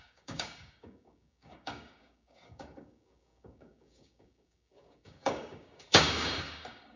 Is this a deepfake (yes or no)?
yes